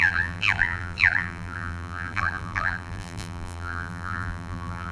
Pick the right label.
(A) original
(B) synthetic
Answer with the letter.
B